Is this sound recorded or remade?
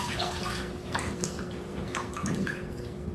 remade